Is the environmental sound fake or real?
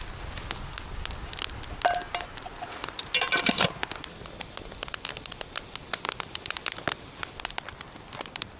real